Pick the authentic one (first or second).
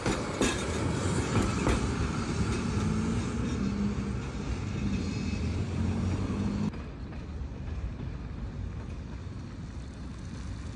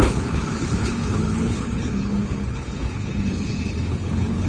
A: first